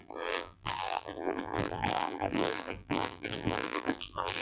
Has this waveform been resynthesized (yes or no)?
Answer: yes